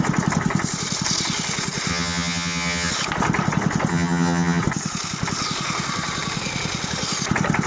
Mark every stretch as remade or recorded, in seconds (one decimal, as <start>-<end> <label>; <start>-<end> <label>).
0.0-1.9 recorded; 1.9-2.9 remade; 2.9-3.9 recorded; 3.9-4.6 remade; 4.6-7.7 recorded